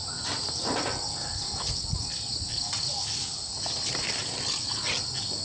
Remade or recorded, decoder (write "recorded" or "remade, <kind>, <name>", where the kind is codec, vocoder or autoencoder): recorded